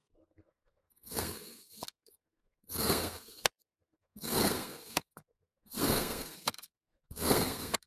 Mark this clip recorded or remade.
remade